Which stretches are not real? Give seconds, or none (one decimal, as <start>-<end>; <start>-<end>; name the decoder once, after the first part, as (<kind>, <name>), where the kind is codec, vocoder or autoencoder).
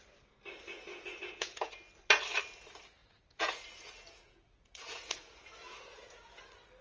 0.9-1.8 (vocoder, Vocos); 3.0-6.2